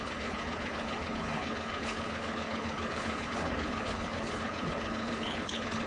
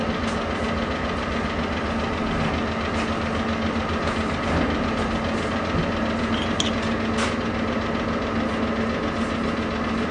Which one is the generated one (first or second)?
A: first